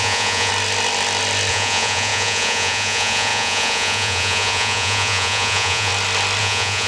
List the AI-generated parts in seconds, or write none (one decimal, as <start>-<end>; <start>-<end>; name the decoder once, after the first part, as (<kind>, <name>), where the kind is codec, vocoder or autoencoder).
0.0-0.5 (vocoder, Vocos); 1.5-5.9; 6.4-6.9